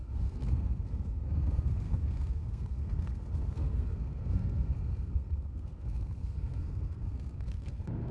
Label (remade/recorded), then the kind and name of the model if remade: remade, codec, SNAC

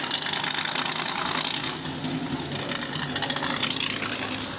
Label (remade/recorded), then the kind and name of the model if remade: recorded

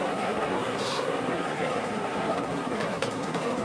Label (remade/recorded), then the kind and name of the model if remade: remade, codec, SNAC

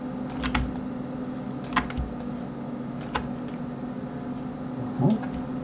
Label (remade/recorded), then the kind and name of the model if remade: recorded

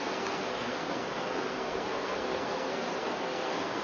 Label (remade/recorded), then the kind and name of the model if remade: remade, codec, SNAC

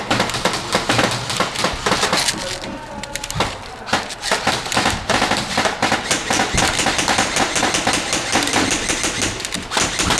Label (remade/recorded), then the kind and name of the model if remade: recorded